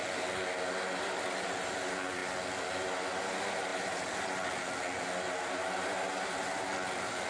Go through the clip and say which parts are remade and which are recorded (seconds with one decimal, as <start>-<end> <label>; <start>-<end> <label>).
0.0-7.3 recorded